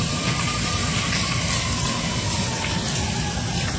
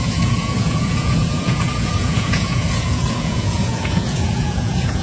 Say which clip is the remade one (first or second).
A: second